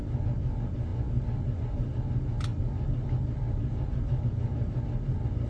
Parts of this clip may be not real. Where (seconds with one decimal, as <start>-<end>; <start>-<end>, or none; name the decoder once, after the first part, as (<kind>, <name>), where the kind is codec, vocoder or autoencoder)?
none